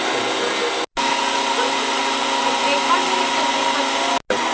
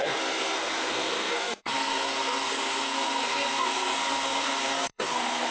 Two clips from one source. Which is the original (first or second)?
first